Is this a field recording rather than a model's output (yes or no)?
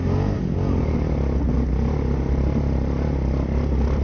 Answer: yes